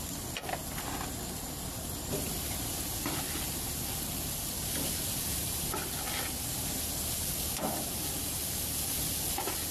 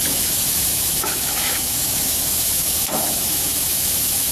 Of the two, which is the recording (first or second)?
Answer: first